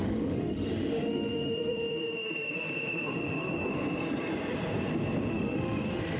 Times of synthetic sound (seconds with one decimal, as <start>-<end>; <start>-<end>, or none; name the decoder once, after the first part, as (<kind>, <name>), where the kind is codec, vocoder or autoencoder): 0.0-3.7 (autoencoder, DAC-VAE); 5.3-6.2